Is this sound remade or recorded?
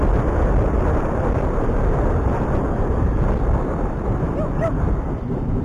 recorded